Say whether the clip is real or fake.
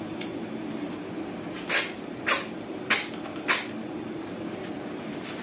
real